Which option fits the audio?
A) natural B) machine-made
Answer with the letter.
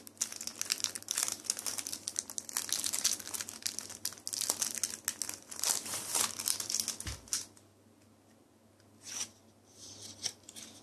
A